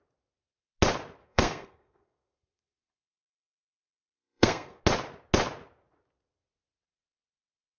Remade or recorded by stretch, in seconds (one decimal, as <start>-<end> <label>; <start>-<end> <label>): 0.0-1.2 recorded; 1.2-4.8 remade; 4.8-7.8 recorded